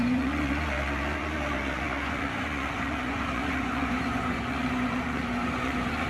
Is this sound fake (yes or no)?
yes